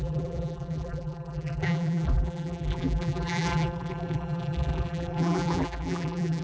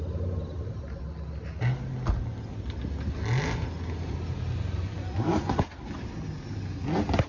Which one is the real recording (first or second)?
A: second